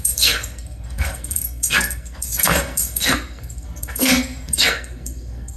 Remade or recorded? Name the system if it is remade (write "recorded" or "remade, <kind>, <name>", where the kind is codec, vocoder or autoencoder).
remade, codec, SNAC